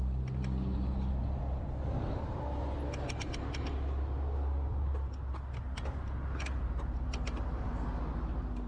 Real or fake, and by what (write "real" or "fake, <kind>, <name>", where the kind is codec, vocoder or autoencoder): real